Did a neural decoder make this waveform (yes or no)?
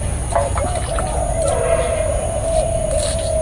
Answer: no